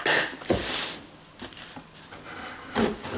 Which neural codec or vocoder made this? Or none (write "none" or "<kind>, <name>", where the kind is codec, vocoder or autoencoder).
none